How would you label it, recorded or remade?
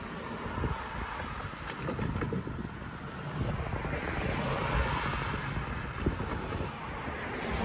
recorded